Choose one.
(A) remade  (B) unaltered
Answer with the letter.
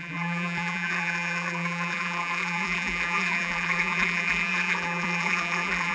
A